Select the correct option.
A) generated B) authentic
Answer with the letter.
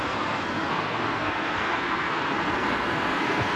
A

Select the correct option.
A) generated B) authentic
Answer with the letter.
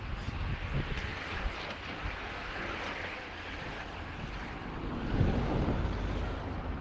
B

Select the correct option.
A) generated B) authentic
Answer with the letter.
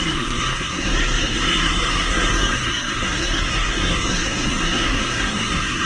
A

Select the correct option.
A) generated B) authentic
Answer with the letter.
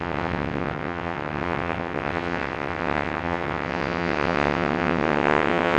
A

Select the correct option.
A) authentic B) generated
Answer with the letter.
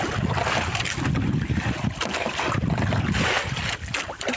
A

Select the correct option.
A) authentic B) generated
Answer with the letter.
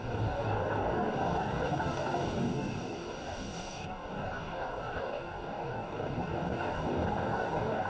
B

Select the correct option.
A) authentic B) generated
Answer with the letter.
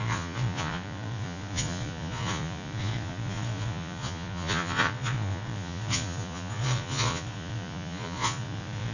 B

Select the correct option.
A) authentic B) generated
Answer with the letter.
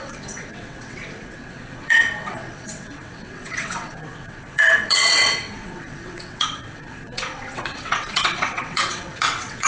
B